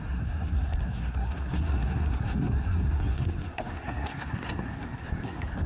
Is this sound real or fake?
fake